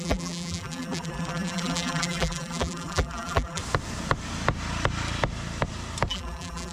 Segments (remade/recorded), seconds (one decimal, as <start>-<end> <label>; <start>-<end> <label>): 0.0-3.6 remade; 3.6-6.1 recorded; 6.1-6.7 remade